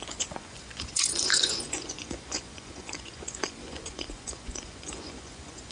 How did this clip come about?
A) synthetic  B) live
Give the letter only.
A